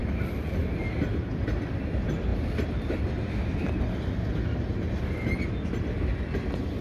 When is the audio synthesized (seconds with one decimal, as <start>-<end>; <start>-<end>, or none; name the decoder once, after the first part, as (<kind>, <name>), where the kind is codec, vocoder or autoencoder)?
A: 0.0-0.6 (vocoder, BigVGAN v2)

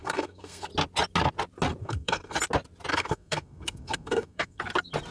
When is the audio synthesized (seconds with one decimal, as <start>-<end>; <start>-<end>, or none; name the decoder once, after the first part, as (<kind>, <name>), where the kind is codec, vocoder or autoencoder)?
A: 0.0-0.7 (codec, SNAC); 1.8-2.4; 2.9-4.6

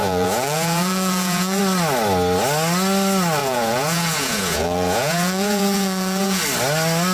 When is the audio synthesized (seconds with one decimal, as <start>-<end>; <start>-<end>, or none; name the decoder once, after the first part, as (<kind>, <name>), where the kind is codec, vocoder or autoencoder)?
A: 0.0-1.6 (vocoder, Vocos); 3.4-6.4

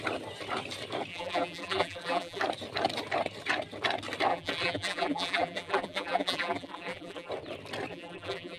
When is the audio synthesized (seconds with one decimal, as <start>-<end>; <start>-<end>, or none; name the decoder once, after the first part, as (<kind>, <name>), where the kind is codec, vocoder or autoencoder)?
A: 1.1-2.4 (vocoder, BigVGAN v2); 4.3-7.3; 7.9-8.6

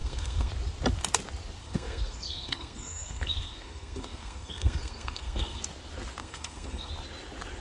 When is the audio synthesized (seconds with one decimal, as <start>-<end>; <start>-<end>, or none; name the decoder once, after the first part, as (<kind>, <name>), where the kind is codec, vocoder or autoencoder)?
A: 0.0-0.5 (codec, SNAC); 1.6-5.6; 6.2-6.9

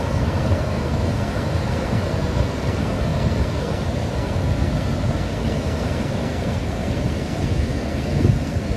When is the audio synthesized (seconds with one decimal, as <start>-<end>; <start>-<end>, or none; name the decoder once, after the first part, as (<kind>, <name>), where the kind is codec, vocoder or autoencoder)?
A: 0.0-8.8 (codec, SNAC)

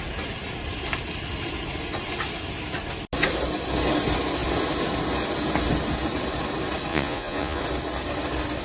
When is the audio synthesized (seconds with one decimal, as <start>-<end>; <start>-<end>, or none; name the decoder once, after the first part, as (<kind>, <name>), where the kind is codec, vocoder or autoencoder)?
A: 6.9-7.6 (vocoder, Vocos)

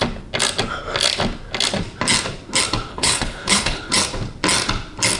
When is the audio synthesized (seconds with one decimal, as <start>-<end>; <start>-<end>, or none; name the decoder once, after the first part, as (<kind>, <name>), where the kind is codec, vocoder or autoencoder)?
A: 2.9-3.9 (codec, HILCodec)